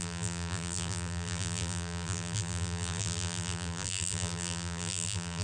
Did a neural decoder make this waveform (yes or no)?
yes